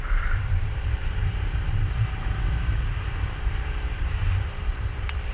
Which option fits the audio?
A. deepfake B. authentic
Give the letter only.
A